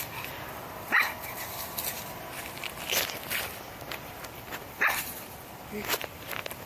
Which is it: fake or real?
fake